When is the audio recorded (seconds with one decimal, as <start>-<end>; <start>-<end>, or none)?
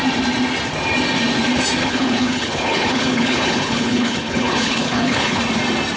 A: 0.0-1.8; 5.4-6.0